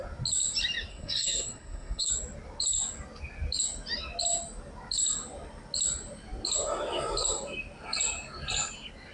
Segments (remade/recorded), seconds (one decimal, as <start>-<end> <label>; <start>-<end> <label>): 0.0-0.9 recorded; 0.9-2.1 remade; 2.1-9.1 recorded